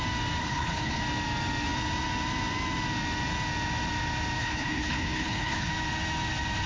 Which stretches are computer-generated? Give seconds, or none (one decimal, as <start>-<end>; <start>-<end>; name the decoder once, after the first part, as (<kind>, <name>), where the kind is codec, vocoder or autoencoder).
0.4-1.0 (codec, HILCodec); 4.4-5.7